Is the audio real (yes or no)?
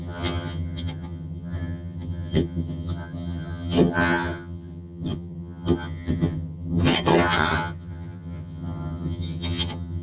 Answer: no